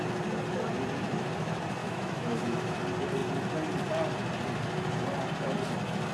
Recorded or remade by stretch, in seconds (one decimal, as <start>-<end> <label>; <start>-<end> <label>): 0.0-1.8 recorded; 1.8-2.8 remade; 2.8-6.1 recorded